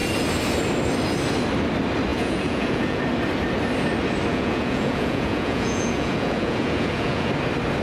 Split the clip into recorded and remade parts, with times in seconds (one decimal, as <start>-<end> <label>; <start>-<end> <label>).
0.0-2.1 recorded; 2.1-3.0 remade; 3.0-4.3 recorded; 4.3-7.3 remade; 7.3-7.8 recorded

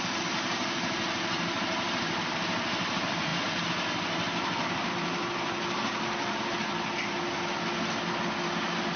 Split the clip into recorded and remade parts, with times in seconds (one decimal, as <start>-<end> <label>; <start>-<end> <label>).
0.0-9.0 recorded

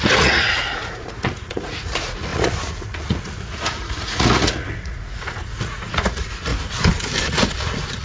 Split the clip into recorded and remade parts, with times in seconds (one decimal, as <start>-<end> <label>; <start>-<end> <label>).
0.0-6.5 remade; 6.5-7.3 recorded; 7.3-8.0 remade

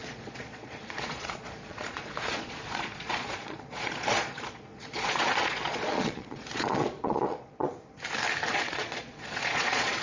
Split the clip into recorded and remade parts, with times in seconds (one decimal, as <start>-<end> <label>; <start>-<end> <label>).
0.0-7.7 remade; 7.7-8.5 recorded; 8.5-10.0 remade

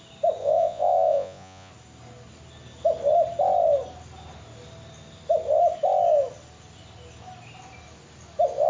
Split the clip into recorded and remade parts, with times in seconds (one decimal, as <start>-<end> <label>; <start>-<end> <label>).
0.0-0.4 recorded; 0.4-1.7 remade; 1.7-8.7 recorded